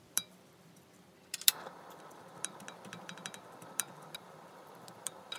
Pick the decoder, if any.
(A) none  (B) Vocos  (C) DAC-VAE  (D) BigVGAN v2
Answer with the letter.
D